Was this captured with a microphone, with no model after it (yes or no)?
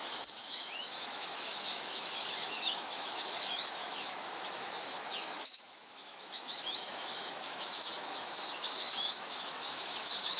no